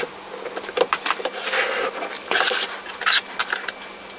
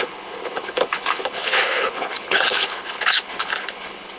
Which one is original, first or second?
first